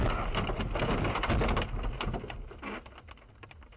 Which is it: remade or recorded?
recorded